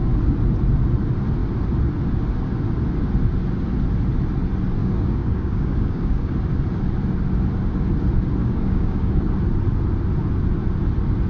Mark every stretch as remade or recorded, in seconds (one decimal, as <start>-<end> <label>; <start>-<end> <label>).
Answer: 0.0-4.8 recorded; 4.8-6.3 remade; 6.3-8.4 recorded; 8.4-9.3 remade; 9.3-11.3 recorded